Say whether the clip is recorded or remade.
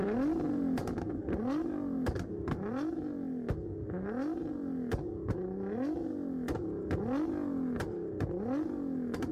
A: recorded